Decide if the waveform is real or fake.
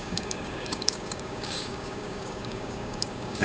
fake